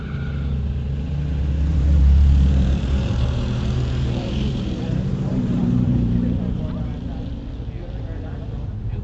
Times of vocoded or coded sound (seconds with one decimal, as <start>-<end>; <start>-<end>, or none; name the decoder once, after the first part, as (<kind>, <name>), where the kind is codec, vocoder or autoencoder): 1.7-6.6 (vocoder, BigVGAN v2)